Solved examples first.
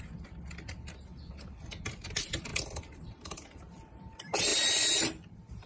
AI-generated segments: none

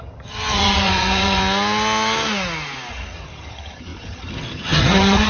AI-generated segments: 0.0-1.4 (vocoder, HiFi-GAN); 2.9-5.3

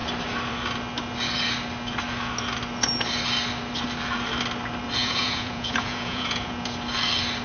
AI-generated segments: 5.0-6.5 (vocoder, Vocos)